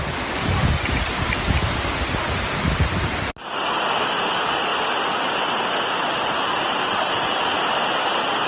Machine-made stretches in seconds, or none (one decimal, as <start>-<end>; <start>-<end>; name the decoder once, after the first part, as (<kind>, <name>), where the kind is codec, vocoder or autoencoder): none